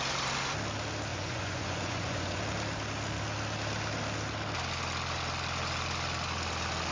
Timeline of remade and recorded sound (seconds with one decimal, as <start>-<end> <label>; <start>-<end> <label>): 0.0-1.1 recorded; 1.1-2.4 remade; 2.4-6.9 recorded